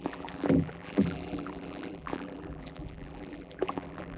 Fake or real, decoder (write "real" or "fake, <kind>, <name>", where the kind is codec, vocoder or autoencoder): fake, vocoder, BigVGAN v2